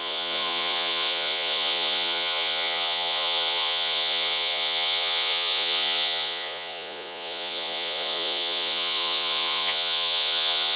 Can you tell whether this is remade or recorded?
remade